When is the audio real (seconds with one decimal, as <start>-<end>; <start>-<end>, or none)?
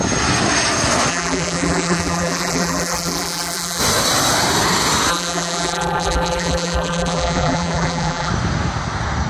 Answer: 0.0-1.1; 3.8-5.1; 8.3-9.3